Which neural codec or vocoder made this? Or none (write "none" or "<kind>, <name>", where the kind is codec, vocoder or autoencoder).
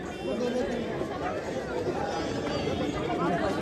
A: none